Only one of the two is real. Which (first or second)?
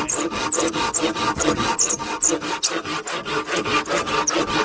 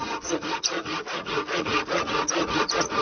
first